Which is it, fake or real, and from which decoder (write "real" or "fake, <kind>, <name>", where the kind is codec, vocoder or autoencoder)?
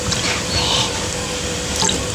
fake, vocoder, BigVGAN v2